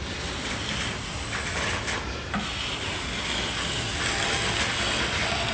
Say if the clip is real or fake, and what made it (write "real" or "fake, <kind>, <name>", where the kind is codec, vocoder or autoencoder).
real